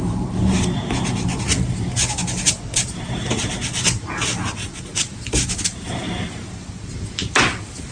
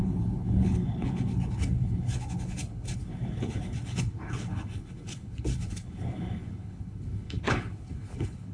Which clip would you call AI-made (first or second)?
second